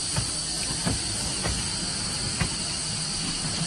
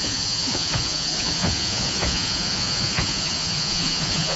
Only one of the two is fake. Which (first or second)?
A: second